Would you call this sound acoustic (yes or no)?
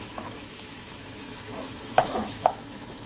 no